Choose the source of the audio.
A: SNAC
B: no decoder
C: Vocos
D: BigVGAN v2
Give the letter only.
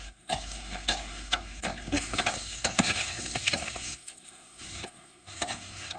A